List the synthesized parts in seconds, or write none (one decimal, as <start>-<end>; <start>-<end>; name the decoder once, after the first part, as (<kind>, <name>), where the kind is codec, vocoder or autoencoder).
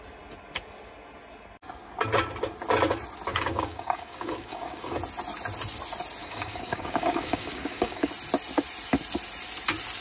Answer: 3.3-5.0 (codec, DAC); 6.2-8.1